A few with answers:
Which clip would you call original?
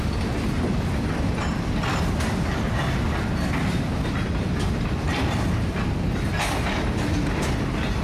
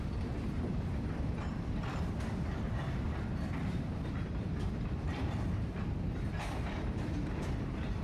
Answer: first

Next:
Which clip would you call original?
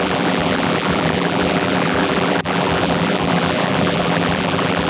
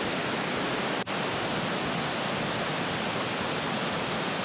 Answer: second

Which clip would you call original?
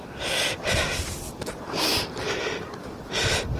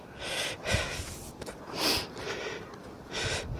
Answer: second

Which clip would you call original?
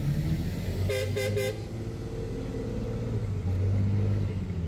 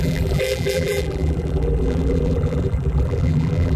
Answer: first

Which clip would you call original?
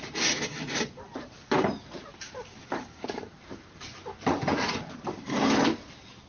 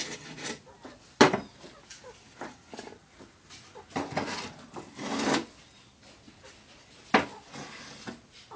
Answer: second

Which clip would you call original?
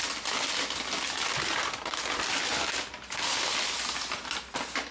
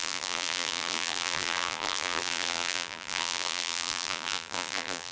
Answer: first